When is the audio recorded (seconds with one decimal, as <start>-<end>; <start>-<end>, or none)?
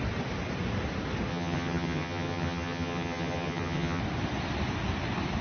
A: 0.0-1.3; 4.0-5.4